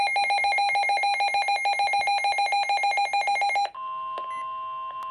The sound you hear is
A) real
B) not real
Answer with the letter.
A